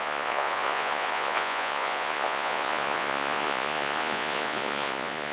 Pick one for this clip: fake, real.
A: fake